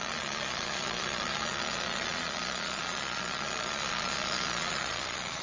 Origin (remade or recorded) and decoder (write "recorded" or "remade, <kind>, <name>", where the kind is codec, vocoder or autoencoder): remade, vocoder, Vocos